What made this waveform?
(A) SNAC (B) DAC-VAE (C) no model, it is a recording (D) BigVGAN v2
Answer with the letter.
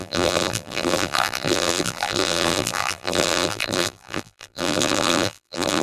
D